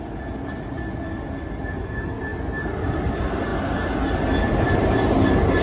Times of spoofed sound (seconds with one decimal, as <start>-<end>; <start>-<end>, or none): none